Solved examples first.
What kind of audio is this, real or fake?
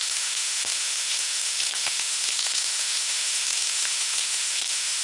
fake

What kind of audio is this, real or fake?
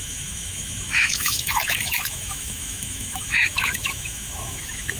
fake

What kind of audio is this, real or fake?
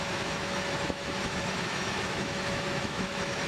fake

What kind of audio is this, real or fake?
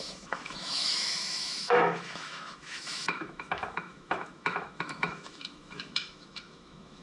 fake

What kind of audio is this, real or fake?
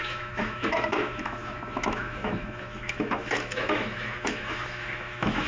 fake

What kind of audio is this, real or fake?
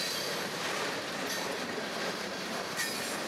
real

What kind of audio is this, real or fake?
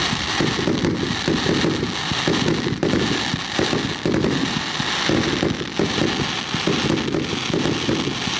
real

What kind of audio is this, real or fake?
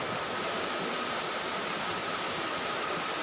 real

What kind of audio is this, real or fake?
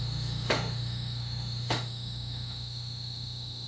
fake